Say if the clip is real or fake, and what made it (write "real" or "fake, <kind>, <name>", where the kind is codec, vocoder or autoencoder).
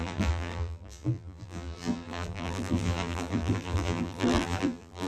fake, vocoder, BigVGAN v2